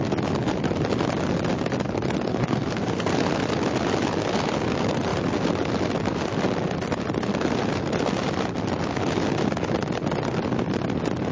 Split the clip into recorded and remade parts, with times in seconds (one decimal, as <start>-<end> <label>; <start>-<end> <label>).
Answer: 0.0-2.3 recorded; 2.3-3.1 remade; 3.1-11.3 recorded